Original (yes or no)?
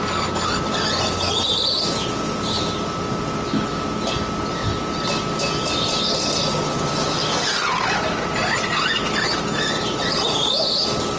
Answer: yes